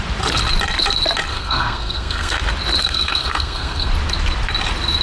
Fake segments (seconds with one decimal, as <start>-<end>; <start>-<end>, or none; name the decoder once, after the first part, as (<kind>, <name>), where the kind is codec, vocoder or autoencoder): 1.3-2.4 (codec, SNAC); 2.8-3.9